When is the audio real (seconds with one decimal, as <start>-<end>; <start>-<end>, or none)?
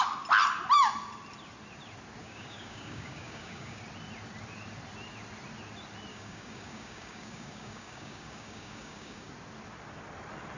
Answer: 0.0-2.2; 3.8-6.1; 9.3-10.6